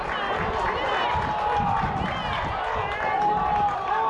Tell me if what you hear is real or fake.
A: real